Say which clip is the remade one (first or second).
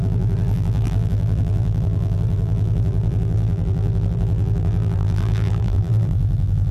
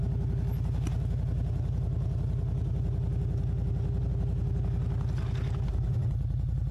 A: first